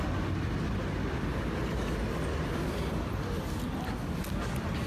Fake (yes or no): no